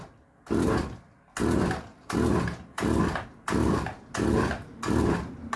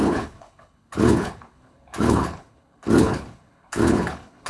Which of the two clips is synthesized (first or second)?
second